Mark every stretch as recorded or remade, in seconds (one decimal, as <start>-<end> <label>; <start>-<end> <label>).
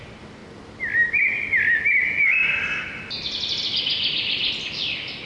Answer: 0.0-5.3 recorded